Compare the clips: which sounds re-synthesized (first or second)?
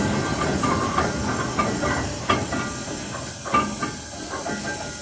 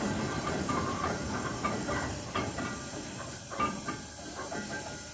second